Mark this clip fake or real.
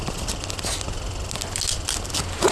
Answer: real